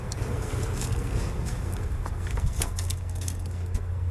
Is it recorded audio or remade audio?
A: remade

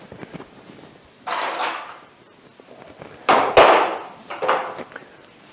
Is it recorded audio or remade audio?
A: recorded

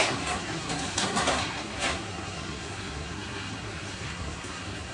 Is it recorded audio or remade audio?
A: remade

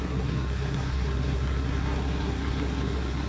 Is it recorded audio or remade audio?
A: remade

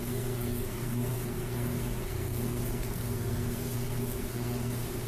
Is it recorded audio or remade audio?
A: remade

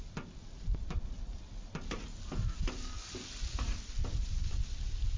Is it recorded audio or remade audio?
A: recorded